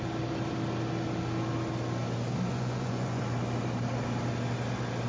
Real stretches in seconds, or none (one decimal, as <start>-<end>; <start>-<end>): 0.0-2.5; 3.2-5.1